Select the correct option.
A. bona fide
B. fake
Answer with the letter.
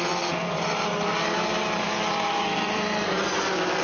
B